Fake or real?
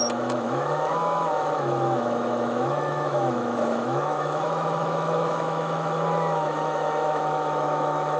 fake